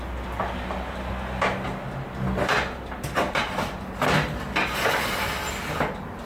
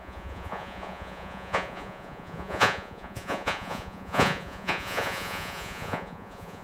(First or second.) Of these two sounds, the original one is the first